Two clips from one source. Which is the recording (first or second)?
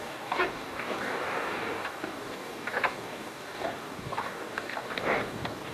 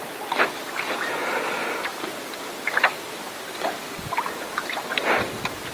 second